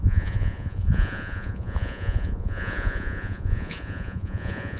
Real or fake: fake